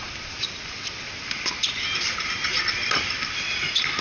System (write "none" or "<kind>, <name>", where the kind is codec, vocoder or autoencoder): none